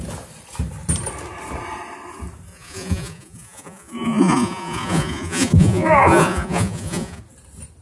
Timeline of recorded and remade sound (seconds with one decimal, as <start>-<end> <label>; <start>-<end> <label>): 0.0-2.5 recorded; 2.5-7.2 remade; 7.2-7.8 recorded